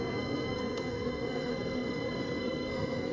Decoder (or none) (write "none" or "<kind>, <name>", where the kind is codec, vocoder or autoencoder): codec, SNAC